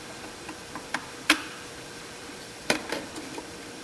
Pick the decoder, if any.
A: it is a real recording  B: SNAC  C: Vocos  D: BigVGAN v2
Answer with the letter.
D